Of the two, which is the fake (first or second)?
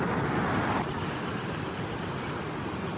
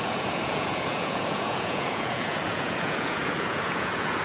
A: second